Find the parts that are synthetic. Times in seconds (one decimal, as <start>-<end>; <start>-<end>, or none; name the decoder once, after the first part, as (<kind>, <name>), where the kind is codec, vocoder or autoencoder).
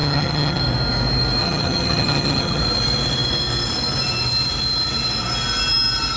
0.0-0.6 (vocoder, HiFi-GAN); 1.4-2.6